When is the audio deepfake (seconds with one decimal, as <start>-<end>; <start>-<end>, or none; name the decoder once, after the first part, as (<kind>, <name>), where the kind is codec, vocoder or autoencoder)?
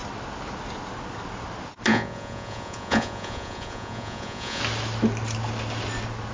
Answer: 1.9-4.6 (vocoder, Vocos)